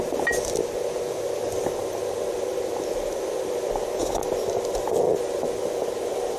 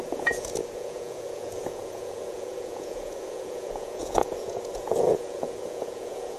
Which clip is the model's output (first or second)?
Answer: second